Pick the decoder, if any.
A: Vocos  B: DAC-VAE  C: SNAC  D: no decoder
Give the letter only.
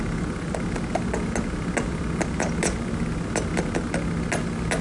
D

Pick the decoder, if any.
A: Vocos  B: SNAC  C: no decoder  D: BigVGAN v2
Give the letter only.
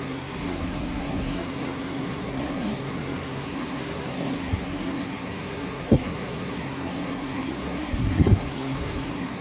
B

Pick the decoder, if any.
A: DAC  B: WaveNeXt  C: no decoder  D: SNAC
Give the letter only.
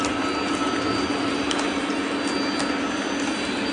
C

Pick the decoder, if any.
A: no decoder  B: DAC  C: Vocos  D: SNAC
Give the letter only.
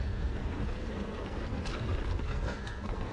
D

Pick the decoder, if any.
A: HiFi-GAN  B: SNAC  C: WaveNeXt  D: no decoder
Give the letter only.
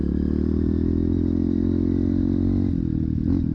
D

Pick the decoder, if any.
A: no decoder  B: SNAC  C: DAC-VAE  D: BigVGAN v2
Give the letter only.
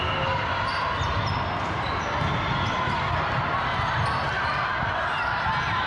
A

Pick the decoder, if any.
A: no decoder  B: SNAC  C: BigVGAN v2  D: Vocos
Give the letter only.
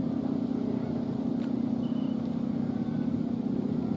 A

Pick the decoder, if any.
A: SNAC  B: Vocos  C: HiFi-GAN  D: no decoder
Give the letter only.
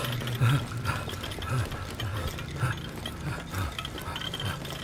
D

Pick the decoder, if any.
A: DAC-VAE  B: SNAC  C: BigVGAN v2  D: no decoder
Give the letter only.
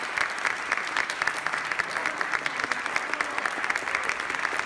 D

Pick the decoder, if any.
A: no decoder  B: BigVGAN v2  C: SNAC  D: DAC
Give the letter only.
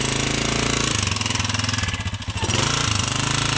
A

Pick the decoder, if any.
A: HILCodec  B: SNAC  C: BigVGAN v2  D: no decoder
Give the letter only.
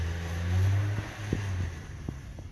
D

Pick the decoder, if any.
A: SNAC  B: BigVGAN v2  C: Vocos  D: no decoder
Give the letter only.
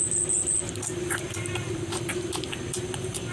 D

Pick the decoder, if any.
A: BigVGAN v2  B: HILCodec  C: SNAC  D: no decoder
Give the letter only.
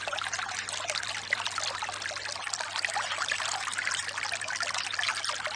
D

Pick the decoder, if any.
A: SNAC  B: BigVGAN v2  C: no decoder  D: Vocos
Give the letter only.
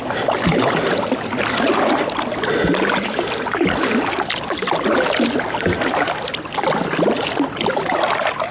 C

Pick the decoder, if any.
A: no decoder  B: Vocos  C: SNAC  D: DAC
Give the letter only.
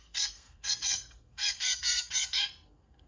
C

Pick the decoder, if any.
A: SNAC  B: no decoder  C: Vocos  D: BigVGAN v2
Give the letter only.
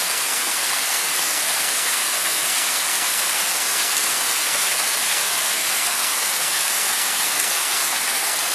A